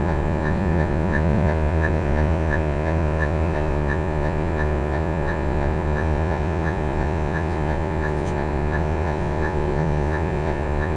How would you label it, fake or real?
fake